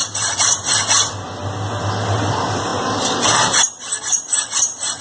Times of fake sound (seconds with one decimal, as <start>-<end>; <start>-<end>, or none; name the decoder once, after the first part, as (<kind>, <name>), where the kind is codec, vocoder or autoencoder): none